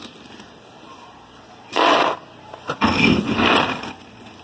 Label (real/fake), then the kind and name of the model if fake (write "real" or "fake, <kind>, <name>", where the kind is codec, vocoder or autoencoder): real